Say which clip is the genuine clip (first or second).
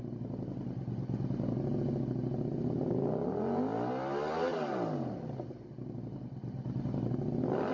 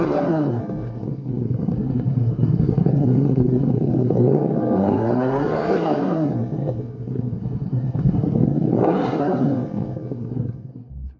first